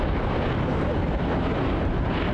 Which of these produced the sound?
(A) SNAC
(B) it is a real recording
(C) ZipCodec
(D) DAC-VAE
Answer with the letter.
B